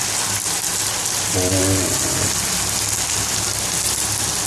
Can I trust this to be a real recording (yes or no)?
yes